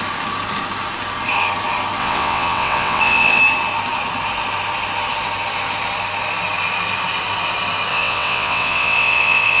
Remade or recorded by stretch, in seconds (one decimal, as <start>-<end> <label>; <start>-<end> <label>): 0.0-2.0 recorded; 2.0-3.4 remade; 3.4-7.9 recorded; 7.9-9.6 remade